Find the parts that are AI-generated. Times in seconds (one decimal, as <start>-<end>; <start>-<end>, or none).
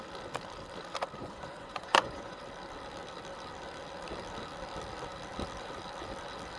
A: 1.2-2.4